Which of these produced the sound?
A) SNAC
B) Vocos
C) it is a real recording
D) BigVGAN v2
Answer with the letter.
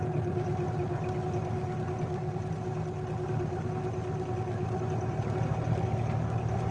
C